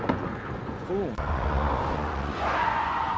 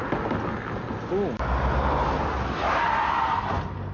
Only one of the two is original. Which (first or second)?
second